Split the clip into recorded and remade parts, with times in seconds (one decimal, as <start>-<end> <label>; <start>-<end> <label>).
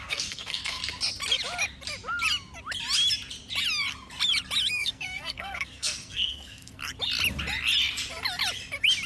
0.0-0.8 remade; 0.8-4.7 recorded; 4.7-6.8 remade; 6.8-9.1 recorded